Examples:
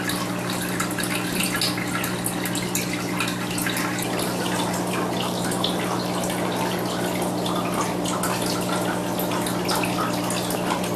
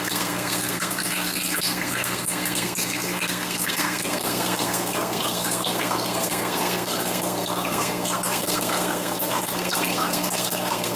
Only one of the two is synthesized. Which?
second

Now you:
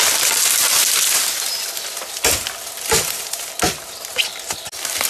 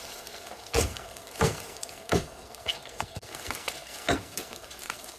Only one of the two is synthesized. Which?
second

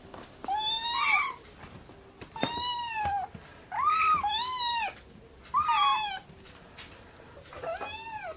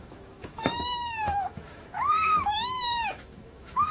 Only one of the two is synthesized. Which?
second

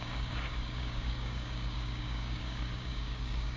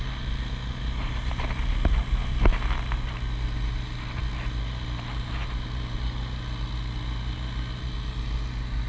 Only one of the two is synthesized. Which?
first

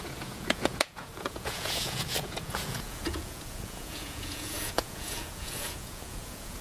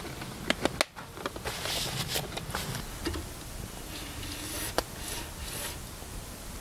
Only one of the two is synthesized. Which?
first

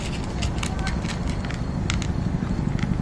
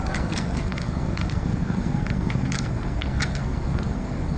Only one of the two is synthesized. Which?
second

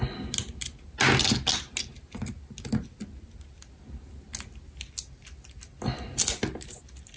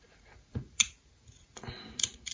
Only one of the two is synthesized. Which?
second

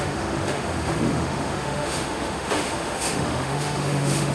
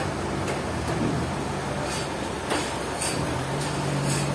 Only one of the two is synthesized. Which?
first